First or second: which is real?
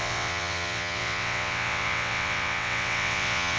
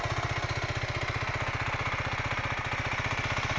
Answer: second